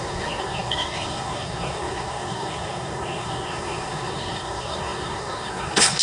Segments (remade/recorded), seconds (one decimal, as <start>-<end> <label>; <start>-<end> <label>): 0.0-6.0 remade